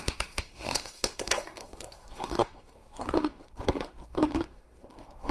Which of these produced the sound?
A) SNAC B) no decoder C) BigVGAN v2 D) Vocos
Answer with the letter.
A